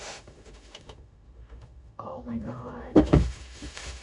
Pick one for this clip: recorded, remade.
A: remade